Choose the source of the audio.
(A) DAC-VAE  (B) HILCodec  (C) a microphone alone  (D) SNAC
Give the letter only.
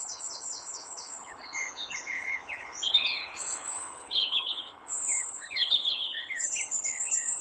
B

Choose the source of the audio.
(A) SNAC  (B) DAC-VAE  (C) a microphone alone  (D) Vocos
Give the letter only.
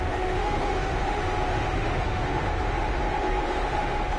B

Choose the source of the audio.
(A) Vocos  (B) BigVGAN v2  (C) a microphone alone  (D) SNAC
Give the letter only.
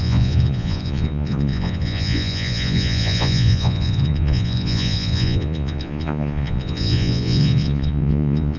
A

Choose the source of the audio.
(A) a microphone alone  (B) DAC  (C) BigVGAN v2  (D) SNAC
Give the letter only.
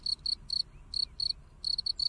A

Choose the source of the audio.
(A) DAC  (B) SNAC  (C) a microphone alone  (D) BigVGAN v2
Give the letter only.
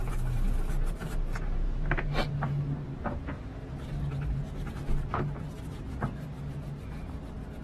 D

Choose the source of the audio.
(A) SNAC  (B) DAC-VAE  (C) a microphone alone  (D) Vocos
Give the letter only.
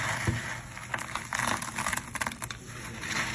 C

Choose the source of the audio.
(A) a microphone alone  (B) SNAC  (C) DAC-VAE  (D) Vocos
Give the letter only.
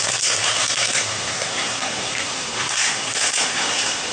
B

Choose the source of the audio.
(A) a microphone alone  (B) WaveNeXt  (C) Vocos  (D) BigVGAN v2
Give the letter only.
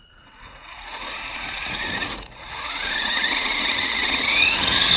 C